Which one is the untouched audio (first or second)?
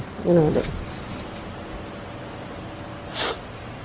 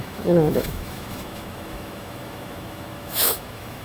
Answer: first